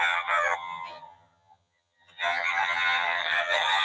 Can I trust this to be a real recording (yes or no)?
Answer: no